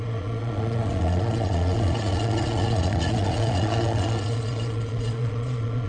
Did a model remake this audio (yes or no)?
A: yes